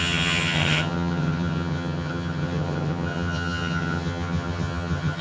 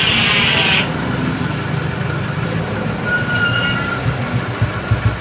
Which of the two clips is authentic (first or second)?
second